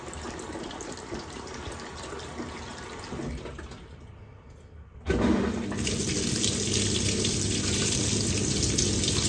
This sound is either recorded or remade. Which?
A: recorded